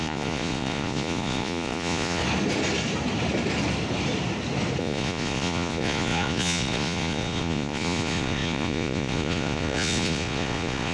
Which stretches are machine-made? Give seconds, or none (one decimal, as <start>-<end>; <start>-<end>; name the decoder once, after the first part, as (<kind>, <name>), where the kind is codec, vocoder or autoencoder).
0.0-2.2 (vocoder, Vocos); 4.8-10.9